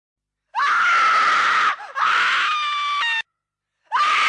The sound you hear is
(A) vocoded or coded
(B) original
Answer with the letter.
B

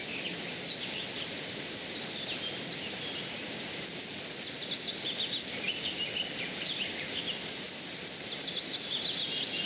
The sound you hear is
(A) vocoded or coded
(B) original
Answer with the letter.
B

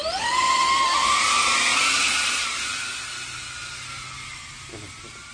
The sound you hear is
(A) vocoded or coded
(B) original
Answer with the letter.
B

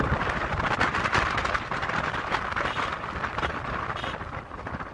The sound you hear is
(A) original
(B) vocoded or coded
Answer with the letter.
B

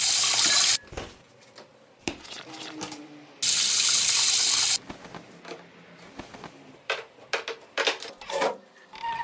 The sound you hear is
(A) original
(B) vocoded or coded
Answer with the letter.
A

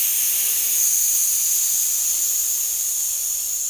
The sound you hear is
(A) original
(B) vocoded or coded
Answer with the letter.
A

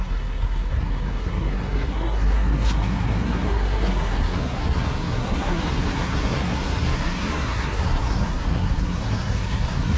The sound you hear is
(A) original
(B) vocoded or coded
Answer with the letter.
B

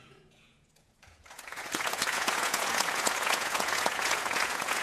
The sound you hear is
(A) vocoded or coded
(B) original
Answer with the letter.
A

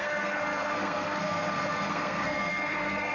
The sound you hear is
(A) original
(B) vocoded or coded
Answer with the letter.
B